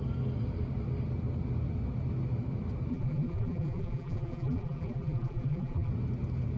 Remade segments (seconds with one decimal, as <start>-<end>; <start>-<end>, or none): 2.9-5.9